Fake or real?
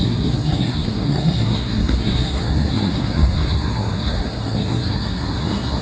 fake